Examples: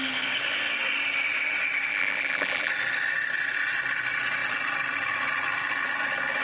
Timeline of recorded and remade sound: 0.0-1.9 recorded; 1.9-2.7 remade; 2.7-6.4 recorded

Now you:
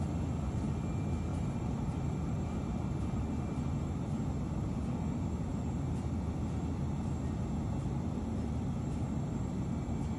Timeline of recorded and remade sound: 0.0-1.3 recorded; 1.3-4.1 remade; 4.1-10.2 recorded

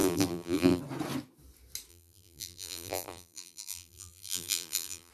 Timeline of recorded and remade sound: 0.0-0.8 remade; 0.8-1.9 recorded; 1.9-5.1 remade

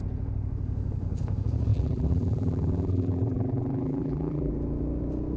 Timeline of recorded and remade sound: 0.0-1.7 recorded; 1.7-4.5 remade; 4.5-5.4 recorded

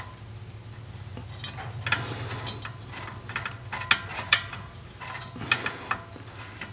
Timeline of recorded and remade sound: 0.0-4.1 recorded; 4.1-5.0 remade; 5.0-6.7 recorded

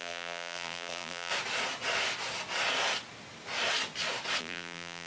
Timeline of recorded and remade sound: 0.0-1.3 remade; 1.3-4.4 recorded; 4.4-5.1 remade

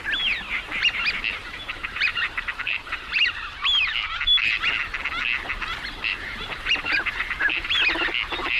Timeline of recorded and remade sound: 0.0-1.4 recorded; 1.4-3.8 remade; 3.8-6.1 recorded; 6.1-7.8 remade; 7.8-8.6 recorded

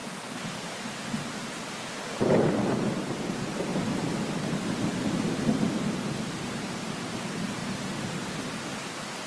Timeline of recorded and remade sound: 0.0-3.3 recorded; 3.3-3.7 remade; 3.7-4.5 recorded; 4.5-7.6 remade; 7.6-9.3 recorded